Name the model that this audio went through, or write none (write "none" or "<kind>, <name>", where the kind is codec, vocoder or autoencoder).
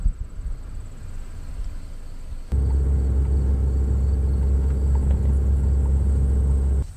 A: none